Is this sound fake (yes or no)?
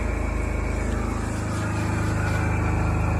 no